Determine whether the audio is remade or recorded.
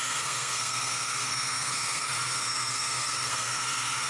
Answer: remade